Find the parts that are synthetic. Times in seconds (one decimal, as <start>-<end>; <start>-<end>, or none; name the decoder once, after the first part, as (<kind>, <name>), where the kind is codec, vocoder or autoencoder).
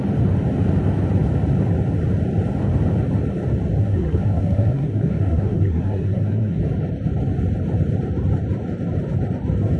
3.8-6.6 (codec, SNAC)